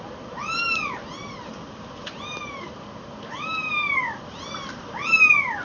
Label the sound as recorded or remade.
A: recorded